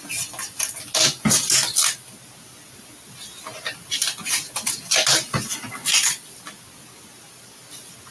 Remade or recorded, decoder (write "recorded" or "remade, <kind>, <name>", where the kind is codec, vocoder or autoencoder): recorded